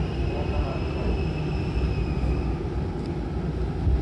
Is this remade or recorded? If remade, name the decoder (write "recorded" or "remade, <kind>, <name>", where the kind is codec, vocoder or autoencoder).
recorded